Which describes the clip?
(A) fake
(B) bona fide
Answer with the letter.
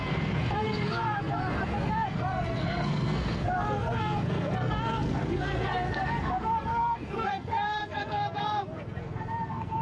A